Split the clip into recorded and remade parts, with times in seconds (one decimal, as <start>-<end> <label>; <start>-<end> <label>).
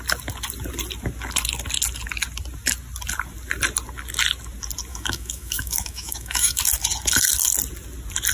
0.0-4.9 recorded; 4.9-6.6 remade; 6.6-8.3 recorded